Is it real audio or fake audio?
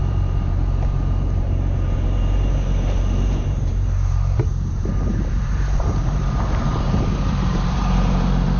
fake